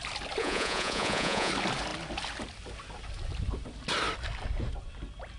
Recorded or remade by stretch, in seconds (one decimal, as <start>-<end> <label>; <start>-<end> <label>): 0.0-0.4 recorded; 0.4-1.5 remade; 1.5-5.4 recorded